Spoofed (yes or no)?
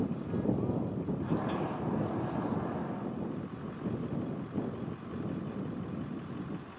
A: no